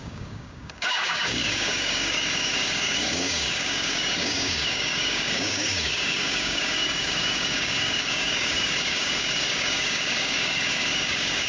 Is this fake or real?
fake